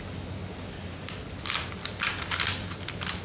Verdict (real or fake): real